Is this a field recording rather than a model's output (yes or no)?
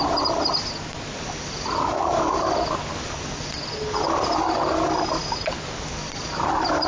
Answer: yes